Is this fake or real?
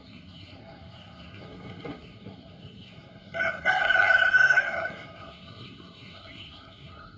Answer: fake